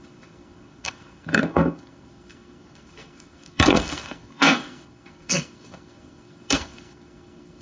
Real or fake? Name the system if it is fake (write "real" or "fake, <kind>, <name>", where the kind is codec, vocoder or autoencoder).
fake, codec, SNAC